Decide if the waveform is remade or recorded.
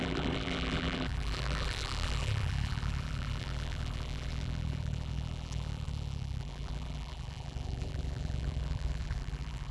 remade